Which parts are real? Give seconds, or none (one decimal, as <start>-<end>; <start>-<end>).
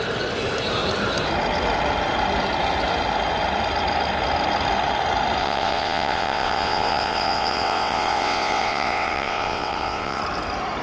0.0-5.4; 10.2-10.8